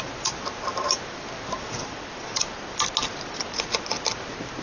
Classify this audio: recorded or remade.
recorded